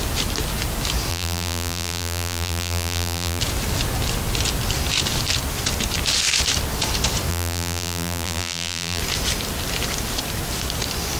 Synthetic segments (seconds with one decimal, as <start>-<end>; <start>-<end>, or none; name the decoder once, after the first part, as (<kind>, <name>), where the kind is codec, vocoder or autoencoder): 1.1-3.4 (vocoder, BigVGAN v2); 7.3-9.0